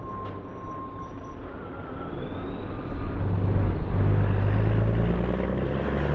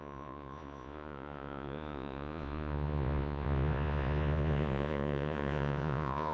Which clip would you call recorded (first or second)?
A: first